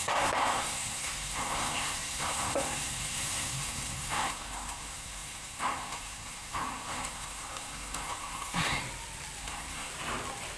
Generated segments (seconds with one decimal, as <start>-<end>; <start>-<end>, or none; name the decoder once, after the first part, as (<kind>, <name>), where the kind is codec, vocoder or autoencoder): 0.0-8.8 (codec, SNAC); 9.4-9.9